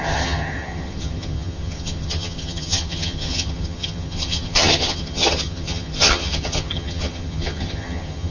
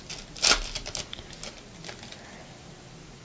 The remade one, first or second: first